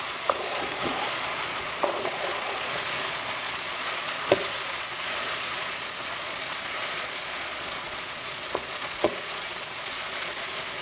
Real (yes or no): no